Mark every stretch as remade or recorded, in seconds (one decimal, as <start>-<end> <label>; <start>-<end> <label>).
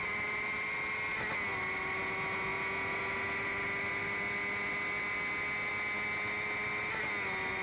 0.0-7.6 recorded